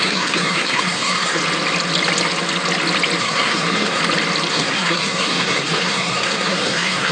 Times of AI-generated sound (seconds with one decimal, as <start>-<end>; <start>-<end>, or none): 0.0-1.4; 3.2-4.0; 4.5-7.1